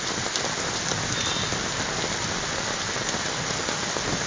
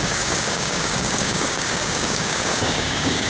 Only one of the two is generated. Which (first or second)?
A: second